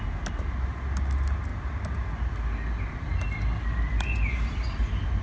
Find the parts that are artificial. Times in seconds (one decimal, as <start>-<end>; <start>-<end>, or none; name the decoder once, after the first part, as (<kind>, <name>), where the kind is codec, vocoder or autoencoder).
none